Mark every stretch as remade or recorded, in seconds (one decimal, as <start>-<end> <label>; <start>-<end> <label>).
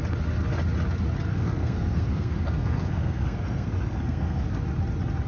0.0-1.3 recorded; 1.3-4.5 remade; 4.5-5.3 recorded